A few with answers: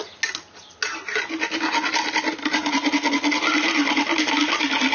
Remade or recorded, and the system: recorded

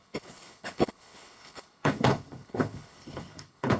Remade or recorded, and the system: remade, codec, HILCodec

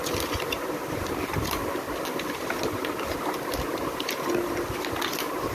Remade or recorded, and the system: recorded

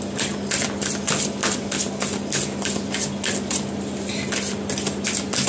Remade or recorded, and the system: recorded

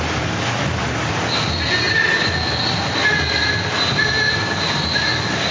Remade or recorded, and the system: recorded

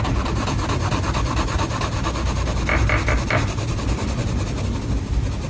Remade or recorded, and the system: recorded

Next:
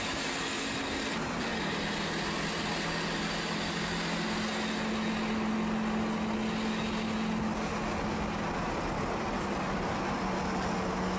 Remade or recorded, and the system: recorded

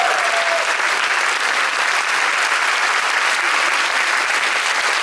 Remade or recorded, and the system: recorded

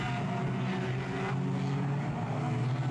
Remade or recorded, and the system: recorded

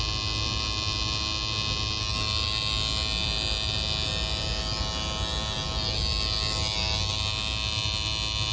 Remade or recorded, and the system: recorded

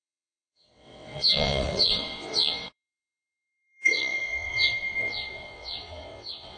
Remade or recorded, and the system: remade, vocoder, WaveNeXt